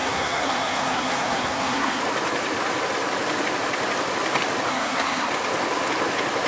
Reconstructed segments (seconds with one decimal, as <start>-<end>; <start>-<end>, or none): 0.0-2.0; 4.7-5.3